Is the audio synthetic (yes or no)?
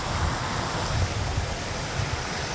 no